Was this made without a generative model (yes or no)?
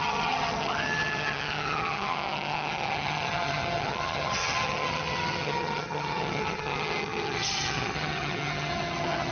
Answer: no